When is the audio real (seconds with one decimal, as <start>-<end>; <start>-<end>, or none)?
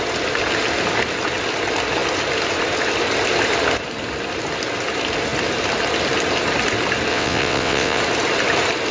0.0-7.1; 8.0-8.9